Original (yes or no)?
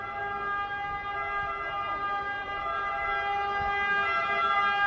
yes